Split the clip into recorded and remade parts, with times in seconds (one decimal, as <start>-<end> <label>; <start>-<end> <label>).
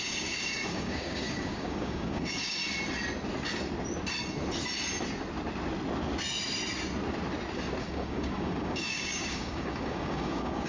0.0-2.6 remade; 2.6-7.8 recorded; 7.8-10.7 remade